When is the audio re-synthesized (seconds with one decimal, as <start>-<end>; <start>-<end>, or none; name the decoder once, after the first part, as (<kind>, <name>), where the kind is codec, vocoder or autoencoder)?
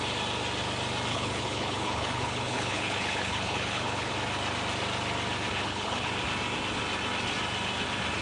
1.1-4.1 (codec, HILCodec); 5.5-6.1